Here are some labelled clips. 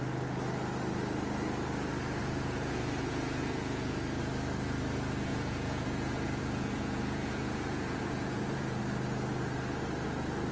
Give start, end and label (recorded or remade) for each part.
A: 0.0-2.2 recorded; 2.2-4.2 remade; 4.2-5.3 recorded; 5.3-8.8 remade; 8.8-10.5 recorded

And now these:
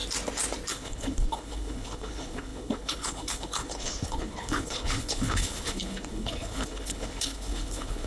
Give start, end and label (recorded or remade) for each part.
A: 0.0-0.7 recorded; 0.7-8.1 remade

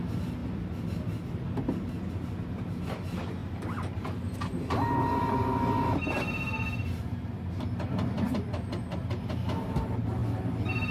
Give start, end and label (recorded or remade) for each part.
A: 0.0-0.4 remade; 0.4-2.1 recorded; 2.1-10.2 remade; 10.2-10.9 recorded